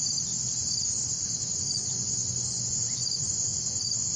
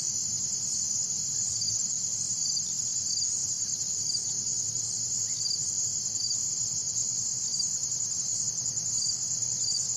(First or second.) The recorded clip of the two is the second